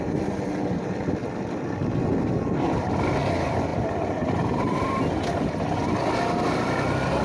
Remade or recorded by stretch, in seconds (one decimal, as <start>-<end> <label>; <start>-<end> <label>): 0.0-7.2 recorded